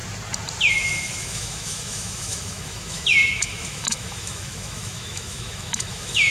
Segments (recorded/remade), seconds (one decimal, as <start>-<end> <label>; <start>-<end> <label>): 0.0-0.7 recorded; 0.7-6.3 remade